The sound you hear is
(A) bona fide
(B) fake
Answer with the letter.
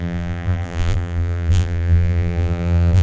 B